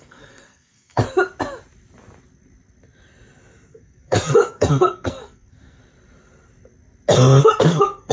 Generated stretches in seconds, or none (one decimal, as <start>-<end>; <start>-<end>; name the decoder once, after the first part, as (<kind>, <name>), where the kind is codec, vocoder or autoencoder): 0.0-1.0 (codec, SNAC); 3.7-5.8; 7.4-8.1